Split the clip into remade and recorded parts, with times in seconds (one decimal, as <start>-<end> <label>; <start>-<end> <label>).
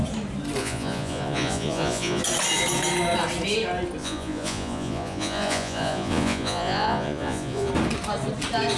0.0-0.6 recorded; 0.6-2.2 remade; 2.2-4.0 recorded; 4.0-7.7 remade; 7.7-8.8 recorded